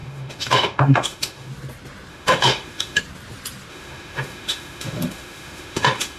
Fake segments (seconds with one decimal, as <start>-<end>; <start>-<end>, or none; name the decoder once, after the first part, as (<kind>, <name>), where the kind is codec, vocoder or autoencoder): 0.0-1.5 (autoencoder, DAC-VAE); 2.1-3.0; 3.7-6.2